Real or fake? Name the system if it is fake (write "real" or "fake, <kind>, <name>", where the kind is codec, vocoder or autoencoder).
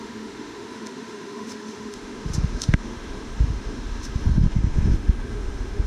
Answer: fake, autoencoder, DAC-VAE